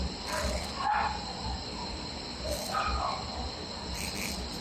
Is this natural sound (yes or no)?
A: no